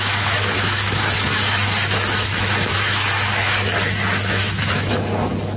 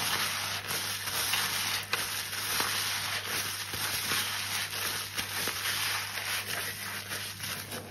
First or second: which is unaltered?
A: second